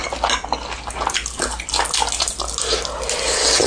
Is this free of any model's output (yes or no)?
yes